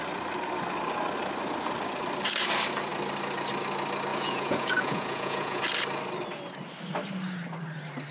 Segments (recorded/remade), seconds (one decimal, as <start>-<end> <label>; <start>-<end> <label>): 0.0-4.1 recorded; 4.1-5.6 remade; 5.6-8.1 recorded